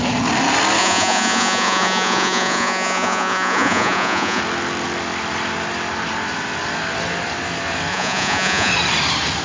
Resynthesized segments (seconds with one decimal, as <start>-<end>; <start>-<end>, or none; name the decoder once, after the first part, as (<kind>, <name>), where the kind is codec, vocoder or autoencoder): 0.8-4.4 (vocoder, Vocos); 7.9-8.7